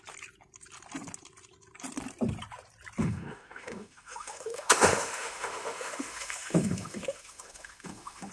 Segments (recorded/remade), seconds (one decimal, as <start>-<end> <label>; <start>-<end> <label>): 0.0-3.0 recorded; 3.0-8.3 remade